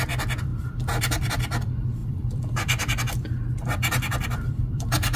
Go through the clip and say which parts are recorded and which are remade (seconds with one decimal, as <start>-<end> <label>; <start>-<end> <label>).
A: 0.0-5.2 remade